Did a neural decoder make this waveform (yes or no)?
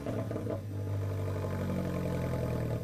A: no